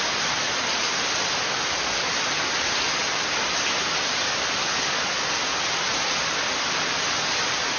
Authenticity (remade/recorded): recorded